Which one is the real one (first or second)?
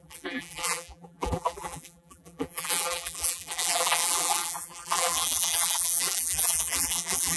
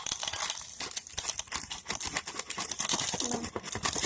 second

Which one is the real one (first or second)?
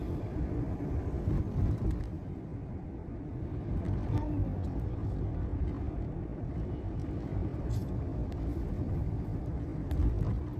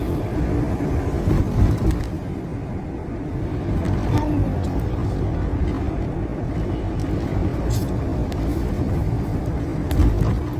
second